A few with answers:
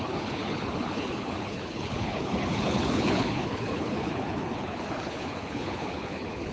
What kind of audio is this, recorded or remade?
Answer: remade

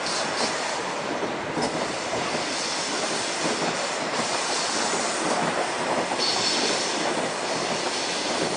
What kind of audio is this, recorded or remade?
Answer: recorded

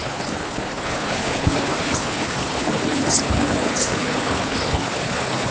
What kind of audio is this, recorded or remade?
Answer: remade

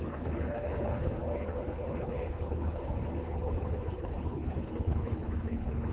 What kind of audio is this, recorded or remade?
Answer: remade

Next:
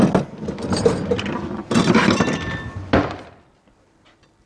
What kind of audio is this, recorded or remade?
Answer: recorded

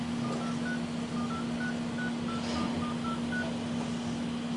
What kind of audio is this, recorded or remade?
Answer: recorded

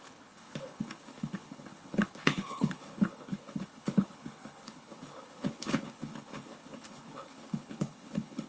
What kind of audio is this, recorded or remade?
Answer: remade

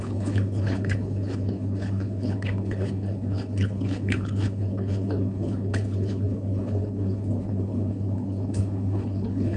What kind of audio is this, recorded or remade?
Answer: remade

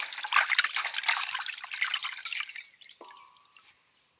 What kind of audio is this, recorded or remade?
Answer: recorded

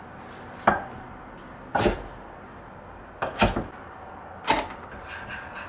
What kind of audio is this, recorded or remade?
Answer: recorded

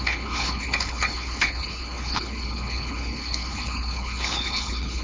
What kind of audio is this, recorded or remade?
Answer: remade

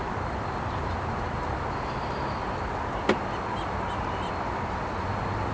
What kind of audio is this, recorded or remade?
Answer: recorded